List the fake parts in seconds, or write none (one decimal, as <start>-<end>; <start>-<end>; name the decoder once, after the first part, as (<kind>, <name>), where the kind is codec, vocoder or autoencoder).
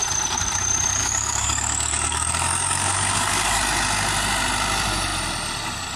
1.0-3.6 (codec, DAC)